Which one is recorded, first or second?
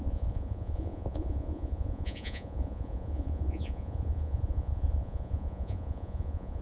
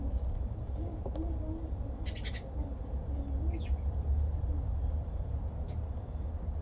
second